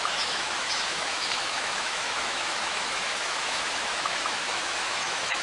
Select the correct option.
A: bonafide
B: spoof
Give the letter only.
B